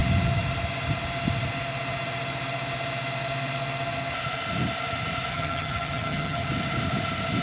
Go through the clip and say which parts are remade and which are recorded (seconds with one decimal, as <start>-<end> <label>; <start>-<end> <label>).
0.0-5.3 recorded; 5.3-6.5 remade; 6.5-7.4 recorded